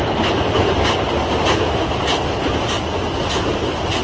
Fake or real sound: real